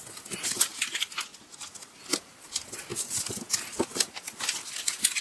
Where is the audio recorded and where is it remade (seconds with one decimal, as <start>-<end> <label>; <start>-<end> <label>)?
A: 0.0-5.2 recorded